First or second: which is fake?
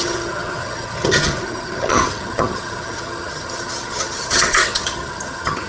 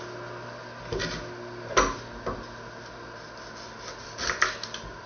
first